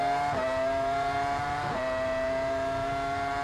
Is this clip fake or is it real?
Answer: fake